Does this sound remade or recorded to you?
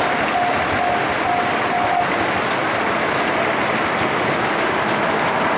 recorded